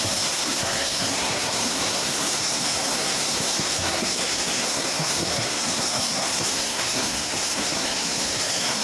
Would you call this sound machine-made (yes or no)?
yes